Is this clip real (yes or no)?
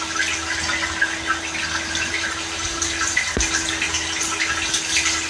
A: yes